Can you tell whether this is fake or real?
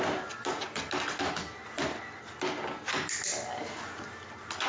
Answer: real